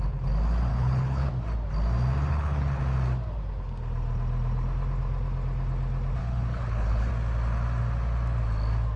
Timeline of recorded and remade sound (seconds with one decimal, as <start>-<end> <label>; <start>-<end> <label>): 0.0-0.7 recorded; 0.7-1.3 remade; 1.3-2.3 recorded; 2.3-2.8 remade; 2.8-6.2 recorded; 6.2-7.1 remade; 7.1-9.0 recorded